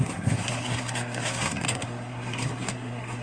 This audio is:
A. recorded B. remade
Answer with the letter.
B